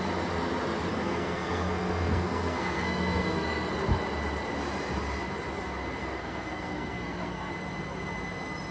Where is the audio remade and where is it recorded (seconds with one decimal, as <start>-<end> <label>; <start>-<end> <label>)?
0.0-0.9 recorded; 0.9-3.7 remade; 3.7-6.0 recorded; 6.0-7.5 remade; 7.5-8.7 recorded